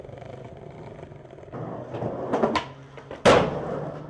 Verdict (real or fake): real